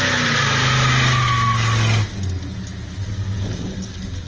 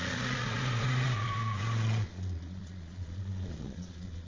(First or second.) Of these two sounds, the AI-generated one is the second